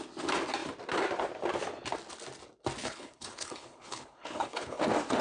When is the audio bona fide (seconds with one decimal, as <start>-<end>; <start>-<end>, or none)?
0.0-2.8; 4.8-5.2